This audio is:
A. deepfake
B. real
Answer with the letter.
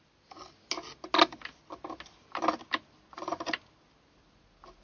B